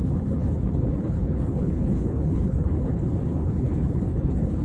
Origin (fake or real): fake